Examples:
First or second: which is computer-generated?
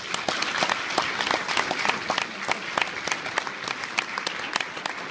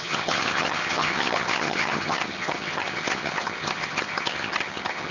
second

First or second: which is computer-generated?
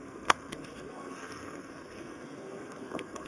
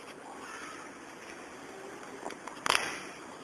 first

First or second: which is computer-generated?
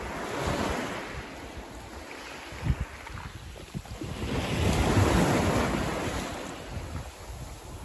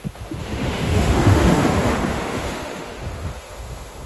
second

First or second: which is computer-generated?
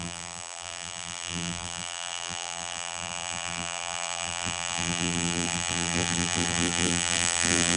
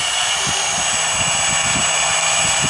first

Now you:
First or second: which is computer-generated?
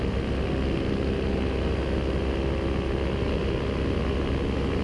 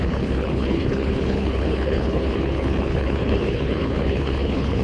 second